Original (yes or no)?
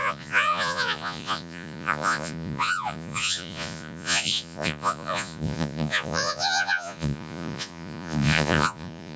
no